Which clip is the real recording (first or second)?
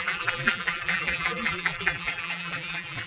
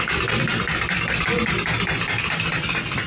second